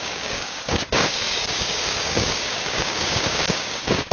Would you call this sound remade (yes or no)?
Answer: yes